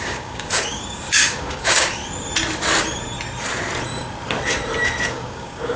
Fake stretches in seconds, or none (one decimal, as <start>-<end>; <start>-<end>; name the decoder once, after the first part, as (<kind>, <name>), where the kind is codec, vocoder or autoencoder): 0.0-2.0 (codec, DAC); 5.1-5.8